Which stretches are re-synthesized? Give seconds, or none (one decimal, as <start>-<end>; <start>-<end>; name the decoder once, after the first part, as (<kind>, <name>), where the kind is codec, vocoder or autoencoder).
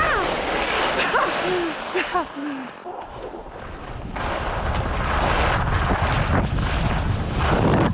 none